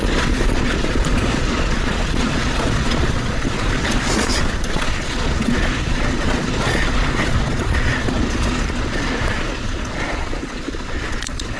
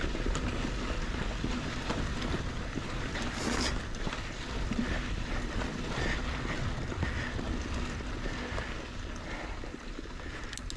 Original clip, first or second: second